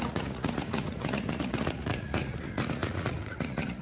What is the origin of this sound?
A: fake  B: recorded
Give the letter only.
A